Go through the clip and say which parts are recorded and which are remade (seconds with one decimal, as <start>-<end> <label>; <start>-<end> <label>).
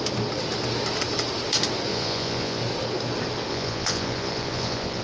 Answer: 0.0-1.9 recorded; 1.9-2.6 remade; 2.6-3.5 recorded; 3.5-5.0 remade